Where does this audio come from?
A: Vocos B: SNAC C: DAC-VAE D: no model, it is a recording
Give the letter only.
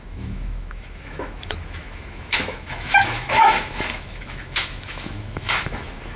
C